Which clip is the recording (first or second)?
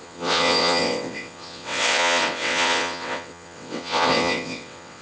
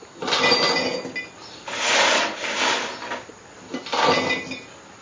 second